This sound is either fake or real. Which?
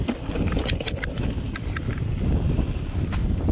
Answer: real